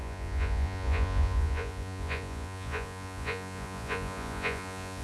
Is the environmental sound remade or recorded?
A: remade